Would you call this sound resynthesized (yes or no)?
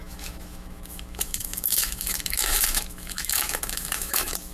yes